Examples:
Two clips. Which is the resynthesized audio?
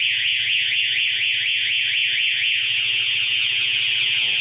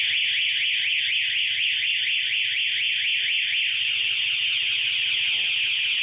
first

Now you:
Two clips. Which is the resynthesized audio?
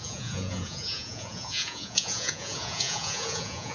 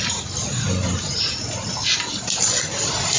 first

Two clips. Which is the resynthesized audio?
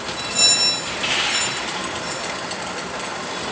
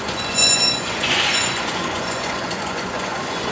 second